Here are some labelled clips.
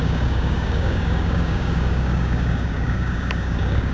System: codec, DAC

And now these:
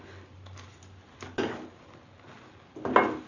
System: none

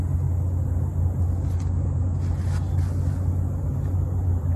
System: none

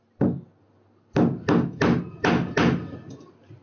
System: none